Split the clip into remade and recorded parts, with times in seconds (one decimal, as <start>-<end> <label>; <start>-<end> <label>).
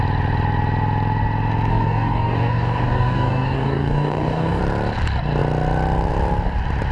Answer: 0.0-1.7 recorded; 1.7-4.6 remade; 4.6-6.9 recorded